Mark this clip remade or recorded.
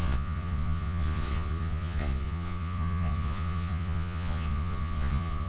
remade